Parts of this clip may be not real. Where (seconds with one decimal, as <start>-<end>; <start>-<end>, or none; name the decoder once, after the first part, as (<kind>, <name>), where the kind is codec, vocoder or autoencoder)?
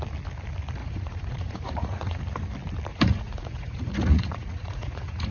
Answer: 0.8-2.2 (vocoder, Vocos); 2.9-5.3